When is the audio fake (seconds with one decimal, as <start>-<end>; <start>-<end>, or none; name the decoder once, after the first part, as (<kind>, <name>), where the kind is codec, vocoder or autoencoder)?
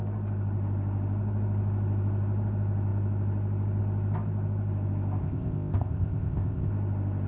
5.2-6.7 (codec, ZipCodec)